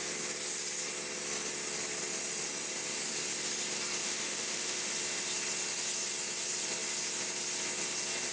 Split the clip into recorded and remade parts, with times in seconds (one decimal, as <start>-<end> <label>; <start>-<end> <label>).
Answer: 0.0-4.0 recorded; 4.0-4.9 remade; 4.9-8.3 recorded